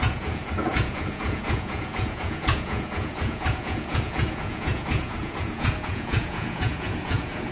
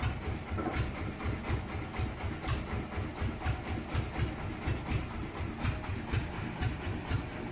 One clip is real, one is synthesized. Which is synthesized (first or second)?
first